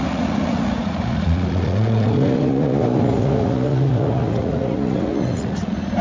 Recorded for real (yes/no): no